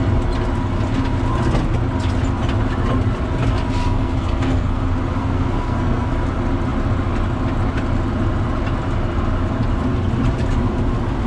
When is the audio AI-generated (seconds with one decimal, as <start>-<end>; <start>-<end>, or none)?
3.8-4.8; 5.2-6.1